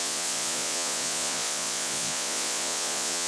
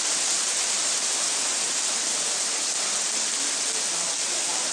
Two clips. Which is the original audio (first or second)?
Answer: second